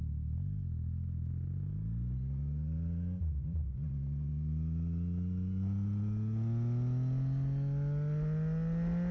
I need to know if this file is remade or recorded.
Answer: recorded